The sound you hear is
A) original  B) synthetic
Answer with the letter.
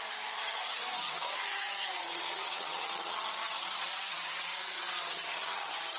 B